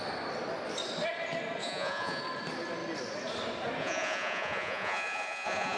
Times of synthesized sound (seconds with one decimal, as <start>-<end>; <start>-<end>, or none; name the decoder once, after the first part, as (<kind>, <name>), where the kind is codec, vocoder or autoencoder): 1.6-2.2 (vocoder, Vocos); 3.8-5.8